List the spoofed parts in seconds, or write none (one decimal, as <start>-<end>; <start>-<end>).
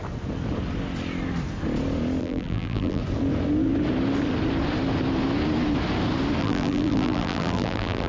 2.2-3.0; 6.4-8.1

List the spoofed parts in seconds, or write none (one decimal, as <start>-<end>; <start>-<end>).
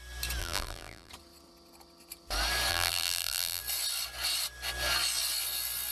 0.4-1.1; 2.7-3.6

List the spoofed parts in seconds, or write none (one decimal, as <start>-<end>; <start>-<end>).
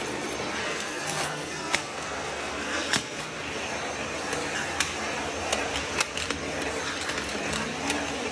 0.6-3.2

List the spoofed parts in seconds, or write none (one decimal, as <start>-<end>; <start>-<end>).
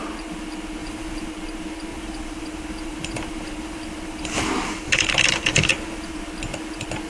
0.8-1.3; 1.9-6.2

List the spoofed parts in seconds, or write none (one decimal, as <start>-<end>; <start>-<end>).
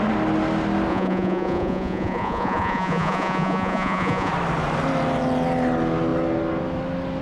0.9-4.3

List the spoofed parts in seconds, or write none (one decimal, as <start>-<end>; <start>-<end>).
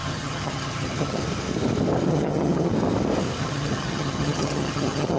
0.0-1.2; 2.1-2.7; 3.4-5.2